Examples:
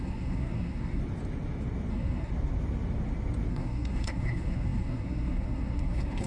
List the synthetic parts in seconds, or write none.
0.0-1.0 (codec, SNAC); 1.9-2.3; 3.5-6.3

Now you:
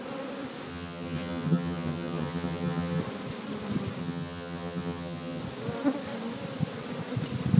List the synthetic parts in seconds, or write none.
0.7-3.0 (vocoder, HiFi-GAN); 4.0-5.4

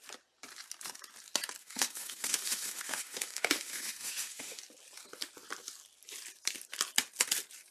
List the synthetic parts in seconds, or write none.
1.6-4.6 (autoencoder, DAC-VAE)

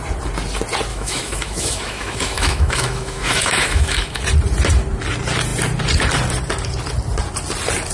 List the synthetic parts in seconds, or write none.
0.9-4.2 (autoencoder, DAC-VAE)

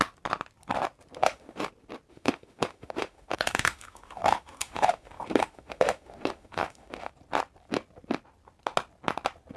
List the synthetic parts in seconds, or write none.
1.2-1.7 (autoencoder, DAC-VAE); 2.1-7.1

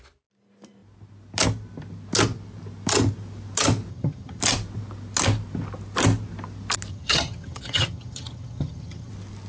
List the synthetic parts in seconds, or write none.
3.9-4.4 (vocoder, HiFi-GAN); 6.9-9.1

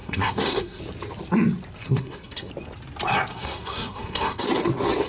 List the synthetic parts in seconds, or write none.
0.0-0.8 (codec, SNAC); 1.8-2.5; 3.3-4.4